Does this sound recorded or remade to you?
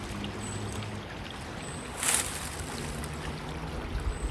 recorded